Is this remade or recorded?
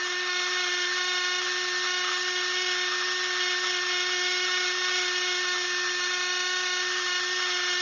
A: recorded